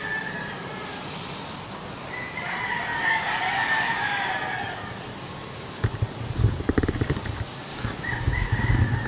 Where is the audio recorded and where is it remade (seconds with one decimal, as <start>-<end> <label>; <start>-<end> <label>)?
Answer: 0.0-2.9 recorded; 2.9-3.4 remade; 3.4-7.7 recorded; 7.7-8.7 remade; 8.7-9.1 recorded